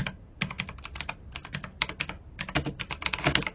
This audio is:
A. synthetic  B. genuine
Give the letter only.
B